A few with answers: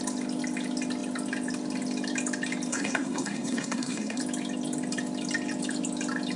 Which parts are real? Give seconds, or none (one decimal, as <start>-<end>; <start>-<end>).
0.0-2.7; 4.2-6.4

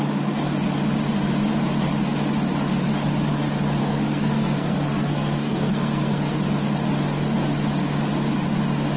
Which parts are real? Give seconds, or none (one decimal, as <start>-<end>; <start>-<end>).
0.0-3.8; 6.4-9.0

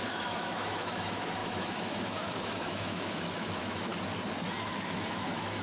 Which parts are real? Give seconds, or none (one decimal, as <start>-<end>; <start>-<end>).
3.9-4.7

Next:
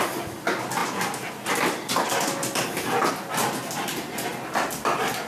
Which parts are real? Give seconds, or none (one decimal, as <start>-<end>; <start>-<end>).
0.0-5.3

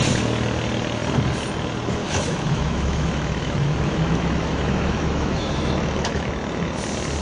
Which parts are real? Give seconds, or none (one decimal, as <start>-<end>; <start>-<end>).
0.0-2.0; 6.3-7.2

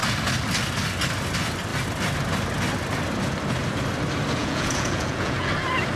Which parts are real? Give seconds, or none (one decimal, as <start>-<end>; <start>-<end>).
0.0-4.4; 5.5-6.0